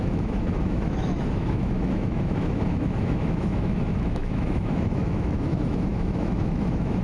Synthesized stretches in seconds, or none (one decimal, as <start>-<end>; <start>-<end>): 0.0-7.0